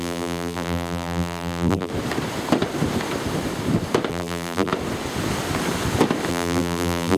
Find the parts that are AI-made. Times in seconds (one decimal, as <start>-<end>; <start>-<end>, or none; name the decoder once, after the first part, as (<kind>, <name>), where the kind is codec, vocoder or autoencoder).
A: 0.0-1.9 (vocoder, BigVGAN v2); 4.1-4.7; 6.3-7.2